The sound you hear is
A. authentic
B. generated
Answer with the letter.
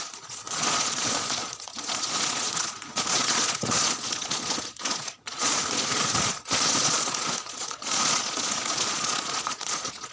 B